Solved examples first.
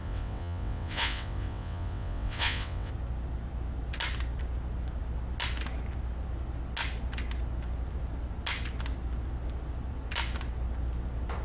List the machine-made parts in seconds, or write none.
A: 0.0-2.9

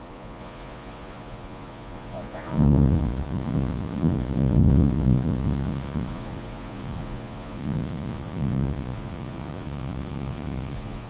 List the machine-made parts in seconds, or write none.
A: 0.0-11.1

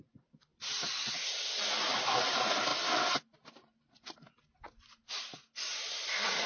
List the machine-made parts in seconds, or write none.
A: none

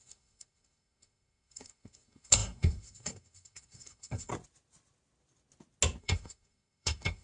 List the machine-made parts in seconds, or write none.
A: 0.0-4.3; 6.0-7.2

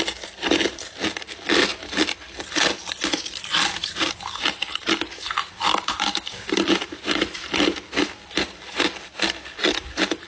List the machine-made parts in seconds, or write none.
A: 5.7-6.8

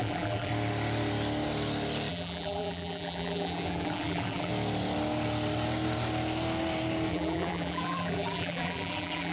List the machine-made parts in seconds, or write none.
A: 0.0-0.5; 2.1-4.5; 7.1-9.3